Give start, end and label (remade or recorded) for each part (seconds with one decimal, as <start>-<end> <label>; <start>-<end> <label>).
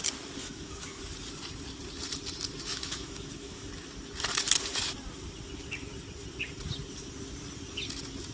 0.0-0.4 recorded; 0.4-1.0 remade; 1.0-2.7 recorded; 2.7-3.7 remade; 3.7-8.3 recorded